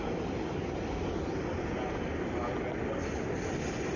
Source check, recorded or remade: recorded